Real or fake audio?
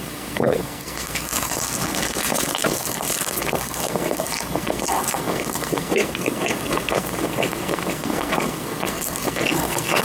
fake